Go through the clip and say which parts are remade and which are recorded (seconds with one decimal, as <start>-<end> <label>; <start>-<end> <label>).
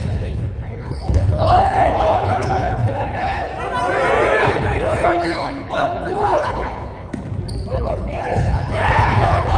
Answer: 0.0-3.5 remade; 3.5-4.4 recorded; 4.4-7.1 remade; 7.1-7.7 recorded; 7.7-9.6 remade